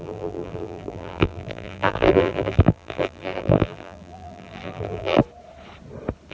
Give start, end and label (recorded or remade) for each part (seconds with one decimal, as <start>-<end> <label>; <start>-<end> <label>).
0.0-5.2 remade; 5.2-6.3 recorded